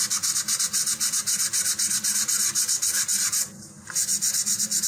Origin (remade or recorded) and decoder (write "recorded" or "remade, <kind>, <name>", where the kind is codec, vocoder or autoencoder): recorded